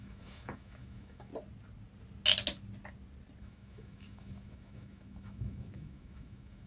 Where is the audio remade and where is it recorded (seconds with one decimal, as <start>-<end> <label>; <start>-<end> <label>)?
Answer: 0.0-1.3 remade; 1.3-3.4 recorded; 3.4-6.7 remade